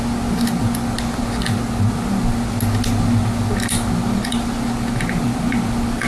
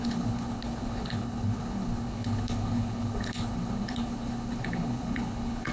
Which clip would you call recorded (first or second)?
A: first